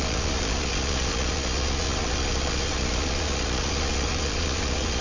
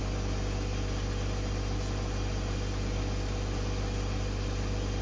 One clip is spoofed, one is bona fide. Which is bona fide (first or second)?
second